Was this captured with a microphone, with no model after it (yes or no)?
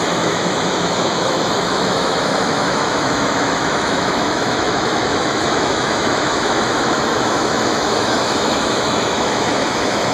no